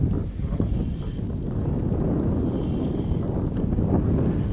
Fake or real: real